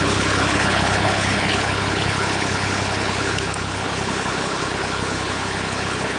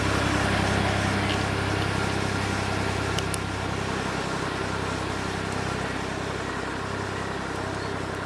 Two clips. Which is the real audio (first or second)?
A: second